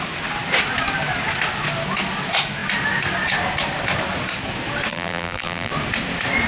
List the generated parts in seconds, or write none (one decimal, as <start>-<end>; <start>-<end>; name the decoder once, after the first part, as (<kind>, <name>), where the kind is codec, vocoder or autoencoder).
4.9-5.7 (vocoder, BigVGAN v2)